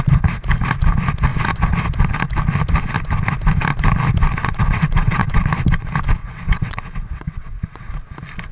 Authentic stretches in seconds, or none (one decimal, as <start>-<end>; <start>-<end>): 0.0-4.4; 5.4-6.2; 7.9-8.5